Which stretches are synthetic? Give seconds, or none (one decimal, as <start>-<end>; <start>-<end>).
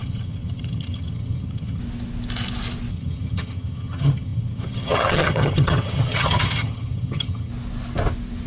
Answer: 0.0-1.8; 2.9-7.5